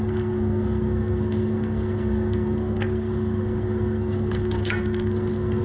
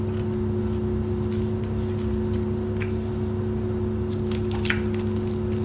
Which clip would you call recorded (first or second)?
second